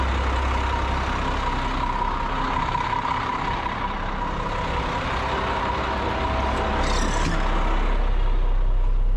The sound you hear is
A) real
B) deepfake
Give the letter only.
A